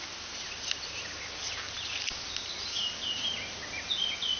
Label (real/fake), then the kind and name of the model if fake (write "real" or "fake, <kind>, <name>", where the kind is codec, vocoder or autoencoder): real